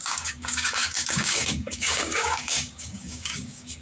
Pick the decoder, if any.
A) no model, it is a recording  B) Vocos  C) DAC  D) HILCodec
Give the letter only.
C